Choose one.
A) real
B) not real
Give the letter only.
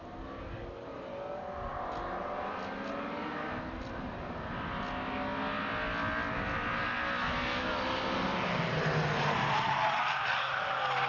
A